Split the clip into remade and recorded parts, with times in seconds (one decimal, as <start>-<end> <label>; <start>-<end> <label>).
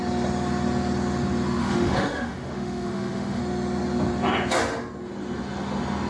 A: 0.0-1.6 recorded; 1.6-3.4 remade; 3.4-6.1 recorded